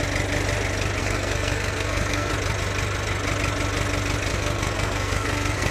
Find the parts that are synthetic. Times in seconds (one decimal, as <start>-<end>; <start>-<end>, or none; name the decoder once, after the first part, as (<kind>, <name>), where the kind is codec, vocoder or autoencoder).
1.0-2.3 (codec, SNAC); 4.3-5.7